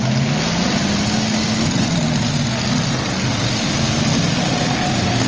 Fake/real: real